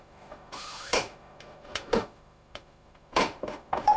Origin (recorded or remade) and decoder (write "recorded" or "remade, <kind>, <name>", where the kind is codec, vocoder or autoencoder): remade, autoencoder, DAC-VAE